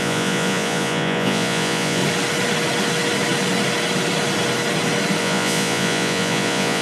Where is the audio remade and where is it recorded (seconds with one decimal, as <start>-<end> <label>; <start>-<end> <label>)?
0.0-2.0 remade; 2.0-5.2 recorded; 5.2-6.8 remade